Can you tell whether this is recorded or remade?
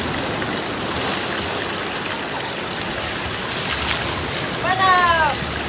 recorded